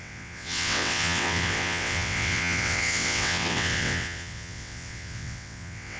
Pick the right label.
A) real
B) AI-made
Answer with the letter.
B